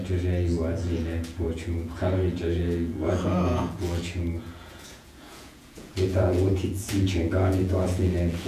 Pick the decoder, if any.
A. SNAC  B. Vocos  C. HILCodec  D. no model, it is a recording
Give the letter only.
B